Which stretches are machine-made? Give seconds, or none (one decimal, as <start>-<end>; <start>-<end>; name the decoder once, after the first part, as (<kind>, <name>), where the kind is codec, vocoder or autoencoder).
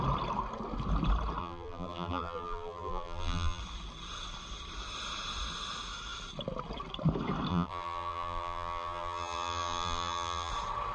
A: 1.4-3.6 (vocoder, BigVGAN v2); 7.5-10.5